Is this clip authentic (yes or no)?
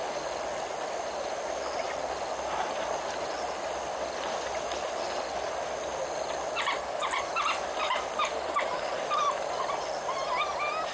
yes